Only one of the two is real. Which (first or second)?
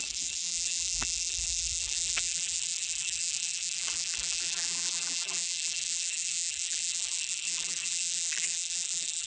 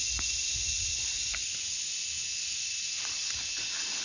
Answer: second